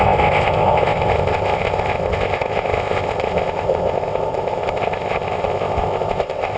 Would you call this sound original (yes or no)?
no